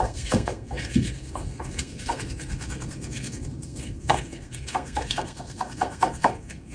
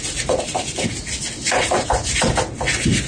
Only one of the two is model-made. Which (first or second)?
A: first